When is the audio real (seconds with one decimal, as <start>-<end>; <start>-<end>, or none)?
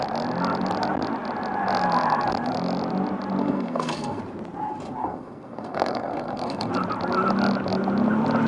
0.0-3.4; 4.2-5.0; 6.7-8.5